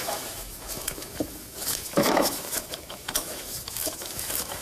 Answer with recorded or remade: remade